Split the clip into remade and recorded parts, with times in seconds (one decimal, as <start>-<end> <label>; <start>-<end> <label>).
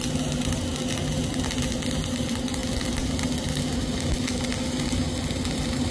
0.0-5.9 recorded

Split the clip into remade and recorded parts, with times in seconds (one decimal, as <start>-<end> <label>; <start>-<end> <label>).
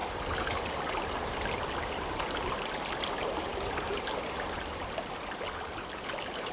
0.0-6.5 recorded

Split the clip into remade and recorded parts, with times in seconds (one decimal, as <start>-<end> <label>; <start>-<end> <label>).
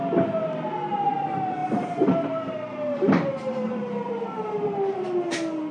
0.0-1.6 recorded; 1.6-5.0 remade; 5.0-5.7 recorded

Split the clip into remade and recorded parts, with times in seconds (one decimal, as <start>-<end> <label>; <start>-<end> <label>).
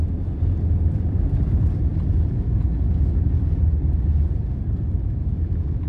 0.0-5.9 recorded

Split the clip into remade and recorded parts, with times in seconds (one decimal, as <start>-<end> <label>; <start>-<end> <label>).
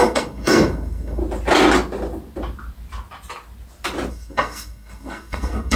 0.0-1.2 remade; 1.2-4.1 recorded; 4.1-5.8 remade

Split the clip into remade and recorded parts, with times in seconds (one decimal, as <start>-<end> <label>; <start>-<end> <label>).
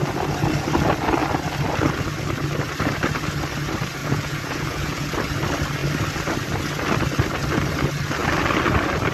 0.0-4.0 recorded; 4.0-5.1 remade; 5.1-9.1 recorded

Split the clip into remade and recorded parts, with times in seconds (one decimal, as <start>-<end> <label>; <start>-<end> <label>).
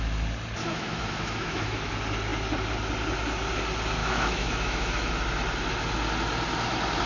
0.0-0.7 recorded; 0.7-1.9 remade; 1.9-4.0 recorded; 4.0-5.1 remade; 5.1-7.1 recorded